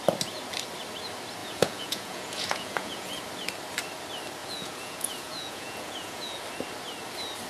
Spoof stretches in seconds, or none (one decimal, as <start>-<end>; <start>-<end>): 1.4-3.2; 4.4-6.4